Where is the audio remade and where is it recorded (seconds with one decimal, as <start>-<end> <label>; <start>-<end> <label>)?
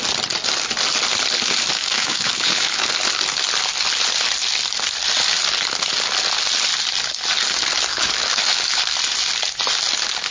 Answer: 0.0-1.8 recorded; 1.8-2.9 remade; 2.9-7.9 recorded; 7.9-8.8 remade; 8.8-10.3 recorded